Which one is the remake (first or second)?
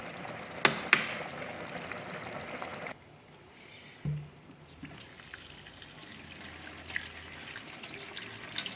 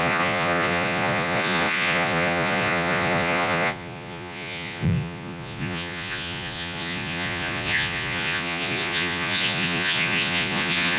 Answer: second